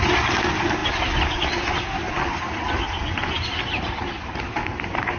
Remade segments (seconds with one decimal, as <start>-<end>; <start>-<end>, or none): none